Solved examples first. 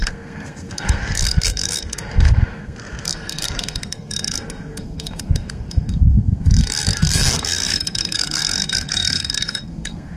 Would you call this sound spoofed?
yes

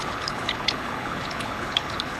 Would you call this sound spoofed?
yes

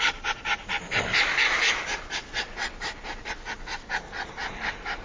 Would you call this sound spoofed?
no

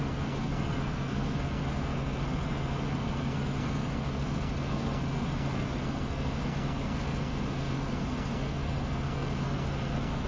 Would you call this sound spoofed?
yes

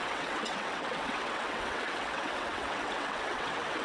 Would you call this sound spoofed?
yes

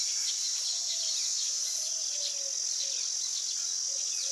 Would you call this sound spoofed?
no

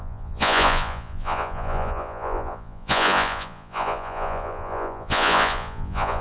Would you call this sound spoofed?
yes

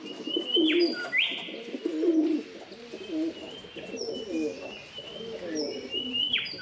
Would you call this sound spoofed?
no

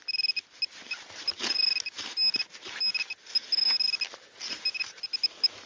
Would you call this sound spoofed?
no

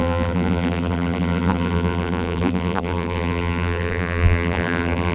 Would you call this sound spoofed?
yes